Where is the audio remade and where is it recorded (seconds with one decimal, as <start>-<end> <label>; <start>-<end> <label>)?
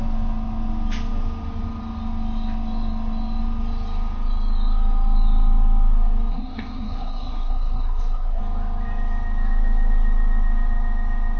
0.0-6.3 recorded; 6.3-8.4 remade; 8.4-11.4 recorded